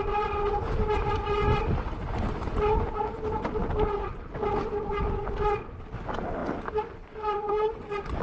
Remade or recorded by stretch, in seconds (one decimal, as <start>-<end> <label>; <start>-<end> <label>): 0.0-6.4 recorded; 6.4-7.7 remade; 7.7-8.2 recorded